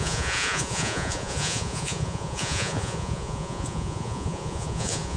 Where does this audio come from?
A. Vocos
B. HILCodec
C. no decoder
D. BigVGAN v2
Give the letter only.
A